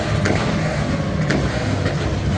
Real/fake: real